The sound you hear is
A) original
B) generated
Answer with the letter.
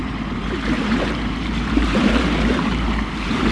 B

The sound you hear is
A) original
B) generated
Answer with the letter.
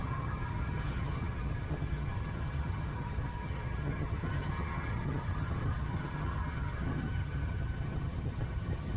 B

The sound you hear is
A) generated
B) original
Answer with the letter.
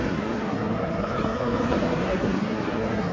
A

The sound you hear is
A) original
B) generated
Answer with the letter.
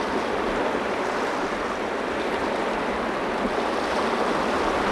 A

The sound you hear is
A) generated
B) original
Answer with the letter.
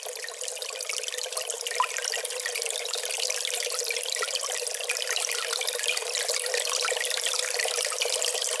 B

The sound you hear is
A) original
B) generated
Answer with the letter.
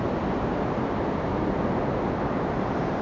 A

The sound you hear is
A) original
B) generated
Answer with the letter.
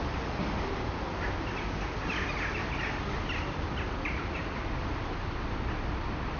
A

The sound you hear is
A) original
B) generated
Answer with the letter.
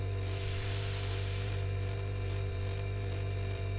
B